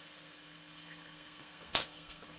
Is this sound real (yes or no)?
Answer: no